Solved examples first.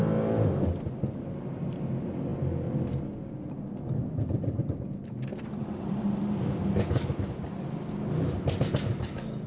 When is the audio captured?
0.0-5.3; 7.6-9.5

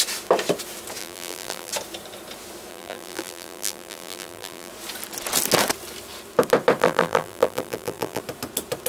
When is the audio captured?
0.0-1.0; 1.7-2.7; 4.7-6.8; 8.2-8.9

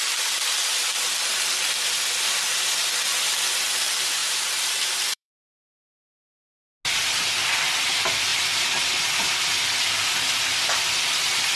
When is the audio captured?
0.0-4.2; 6.0-11.6